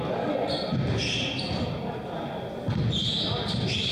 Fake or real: real